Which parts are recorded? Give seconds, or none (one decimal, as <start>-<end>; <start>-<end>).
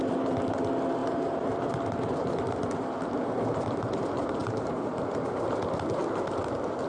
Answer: 0.0-1.0; 2.4-4.4; 5.4-6.9